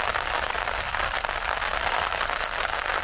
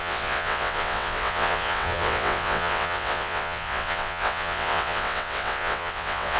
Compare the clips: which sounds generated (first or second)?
second